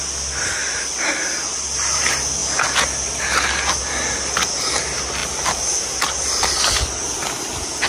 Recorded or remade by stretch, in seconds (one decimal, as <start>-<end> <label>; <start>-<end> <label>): 0.0-7.9 recorded